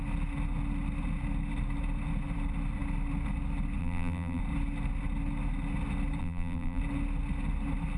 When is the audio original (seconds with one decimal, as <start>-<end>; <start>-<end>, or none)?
0.0-3.8; 4.4-6.2; 6.8-8.0